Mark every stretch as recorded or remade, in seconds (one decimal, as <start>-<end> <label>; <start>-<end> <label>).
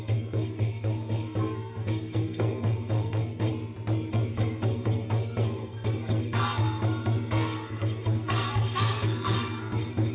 0.0-3.5 remade; 3.5-4.1 recorded; 4.1-10.1 remade